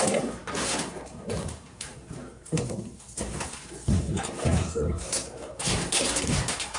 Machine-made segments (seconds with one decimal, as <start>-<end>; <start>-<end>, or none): 0.0-6.8